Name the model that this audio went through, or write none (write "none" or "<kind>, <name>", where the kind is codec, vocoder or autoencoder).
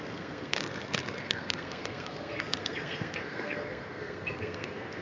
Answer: codec, SNAC